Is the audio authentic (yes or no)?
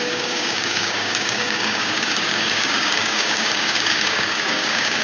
no